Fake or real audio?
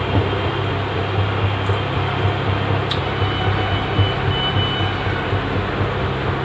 real